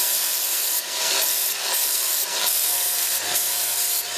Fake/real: fake